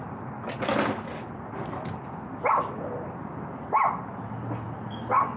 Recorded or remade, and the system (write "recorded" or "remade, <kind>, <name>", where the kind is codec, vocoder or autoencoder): recorded